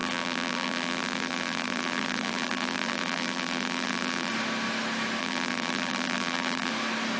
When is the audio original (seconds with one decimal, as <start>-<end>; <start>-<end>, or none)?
4.3-5.2; 6.7-7.2